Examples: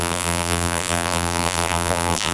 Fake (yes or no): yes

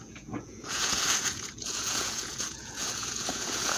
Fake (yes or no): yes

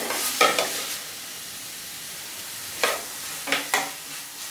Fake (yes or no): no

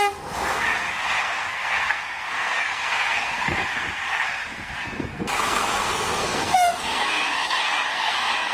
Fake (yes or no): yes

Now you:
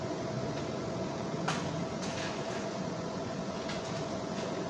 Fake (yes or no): yes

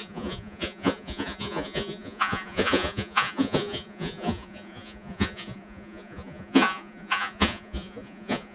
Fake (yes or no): yes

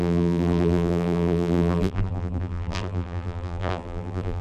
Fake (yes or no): yes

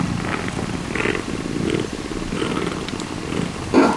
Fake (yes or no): no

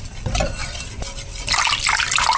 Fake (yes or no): no